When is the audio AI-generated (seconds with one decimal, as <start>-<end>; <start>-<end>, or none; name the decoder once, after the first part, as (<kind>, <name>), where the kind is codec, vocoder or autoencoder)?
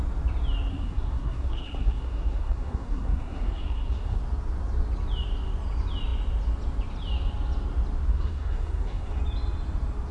0.7-4.2 (codec, SNAC); 8.1-9.2